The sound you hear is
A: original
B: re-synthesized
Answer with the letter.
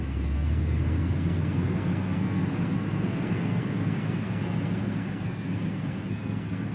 B